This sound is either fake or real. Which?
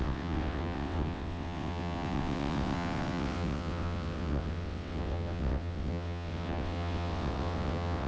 fake